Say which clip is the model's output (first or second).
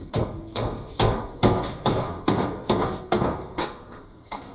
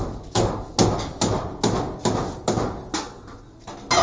first